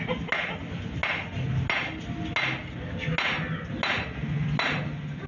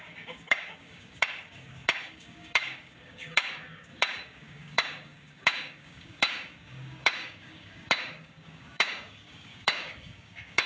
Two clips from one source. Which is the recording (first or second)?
first